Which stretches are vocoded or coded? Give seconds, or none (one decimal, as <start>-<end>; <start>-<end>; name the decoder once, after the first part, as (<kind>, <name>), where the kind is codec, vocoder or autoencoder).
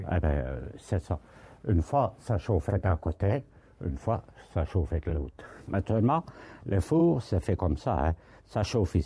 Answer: 2.7-3.5 (codec, SNAC); 5.1-5.7